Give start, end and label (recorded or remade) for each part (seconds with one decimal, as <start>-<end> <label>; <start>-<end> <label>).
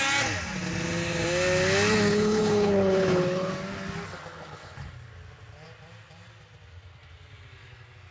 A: 0.0-2.1 recorded; 2.1-3.5 remade; 3.5-4.3 recorded; 4.3-4.9 remade; 4.9-8.1 recorded